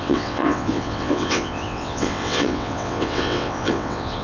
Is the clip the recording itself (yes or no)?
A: no